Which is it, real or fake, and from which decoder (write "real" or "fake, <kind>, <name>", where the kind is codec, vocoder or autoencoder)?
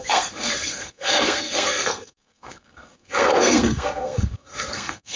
fake, codec, SNAC